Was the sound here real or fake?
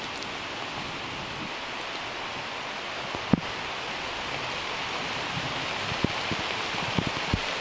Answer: real